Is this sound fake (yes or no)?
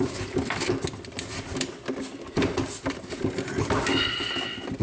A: no